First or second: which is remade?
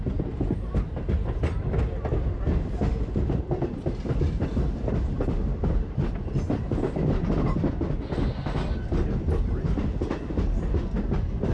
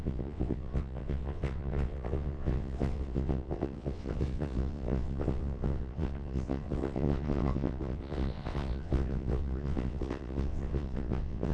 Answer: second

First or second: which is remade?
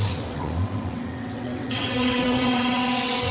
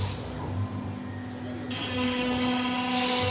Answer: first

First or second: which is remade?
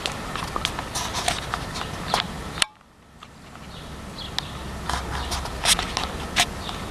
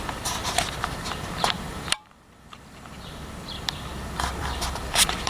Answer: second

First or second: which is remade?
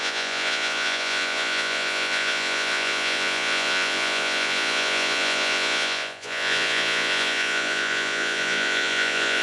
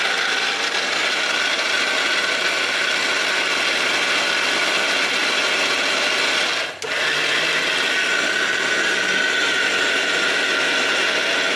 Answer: first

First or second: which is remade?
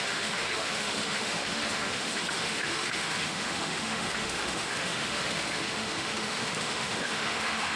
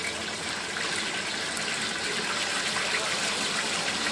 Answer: first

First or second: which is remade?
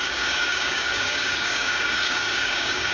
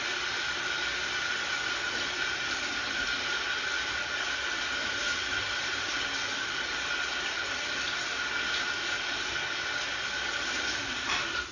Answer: first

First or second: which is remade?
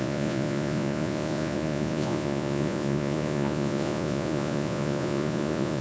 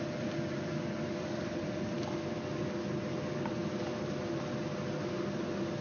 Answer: first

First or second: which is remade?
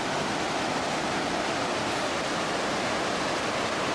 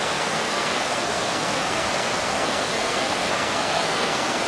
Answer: second